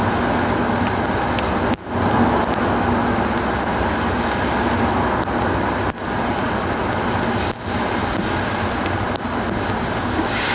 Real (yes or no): yes